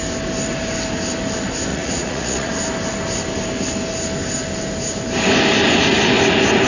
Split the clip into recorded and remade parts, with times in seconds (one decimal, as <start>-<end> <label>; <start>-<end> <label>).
0.0-1.7 recorded; 1.7-2.5 remade; 2.5-6.7 recorded